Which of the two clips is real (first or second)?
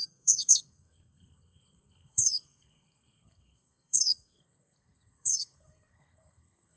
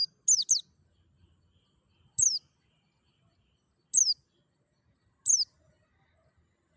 second